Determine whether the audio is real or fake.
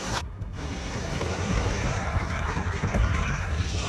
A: fake